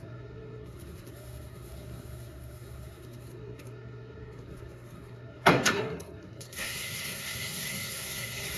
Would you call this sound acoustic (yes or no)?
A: no